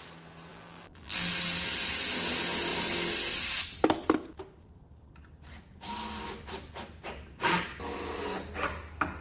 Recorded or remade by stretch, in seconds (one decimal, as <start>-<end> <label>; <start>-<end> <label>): 0.0-0.5 recorded; 0.5-1.3 remade; 1.3-9.2 recorded